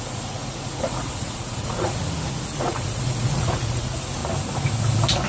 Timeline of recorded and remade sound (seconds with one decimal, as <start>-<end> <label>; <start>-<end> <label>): 0.0-4.2 remade; 4.2-5.3 recorded